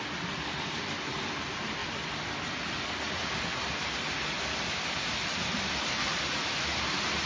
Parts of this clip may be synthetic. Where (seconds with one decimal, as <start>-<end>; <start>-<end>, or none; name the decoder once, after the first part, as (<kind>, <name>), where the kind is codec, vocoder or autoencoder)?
none